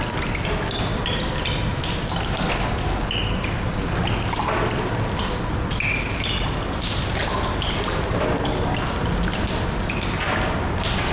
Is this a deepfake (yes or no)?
no